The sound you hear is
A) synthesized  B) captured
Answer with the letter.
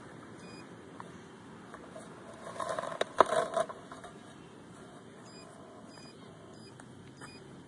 B